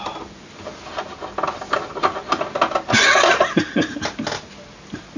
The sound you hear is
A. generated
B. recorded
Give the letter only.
B